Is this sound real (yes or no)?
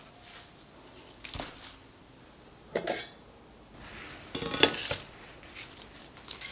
yes